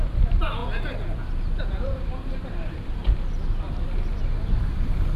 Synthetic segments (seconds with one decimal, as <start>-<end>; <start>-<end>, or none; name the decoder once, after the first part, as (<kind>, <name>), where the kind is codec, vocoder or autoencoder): 0.0-0.6 (vocoder, BigVGAN v2); 1.8-3.0; 4.5-5.2